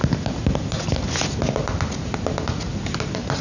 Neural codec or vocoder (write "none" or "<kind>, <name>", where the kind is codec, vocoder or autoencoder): none